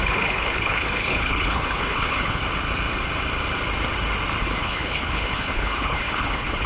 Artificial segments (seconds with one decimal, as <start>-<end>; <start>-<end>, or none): 0.0-2.4; 4.4-6.7